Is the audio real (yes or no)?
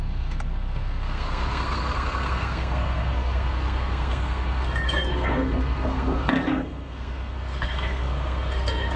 no